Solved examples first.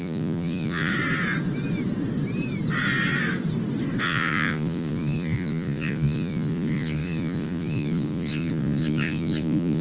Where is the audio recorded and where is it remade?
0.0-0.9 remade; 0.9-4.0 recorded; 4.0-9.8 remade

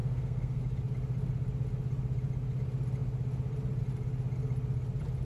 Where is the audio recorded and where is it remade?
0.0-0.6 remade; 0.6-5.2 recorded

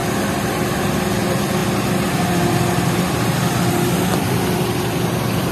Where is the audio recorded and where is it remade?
0.0-5.5 recorded

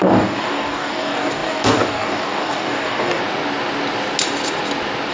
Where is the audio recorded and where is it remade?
0.0-3.2 remade; 3.2-5.1 recorded

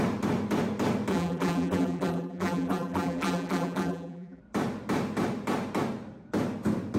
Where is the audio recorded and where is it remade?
0.0-1.1 recorded; 1.1-4.4 remade; 4.4-7.0 recorded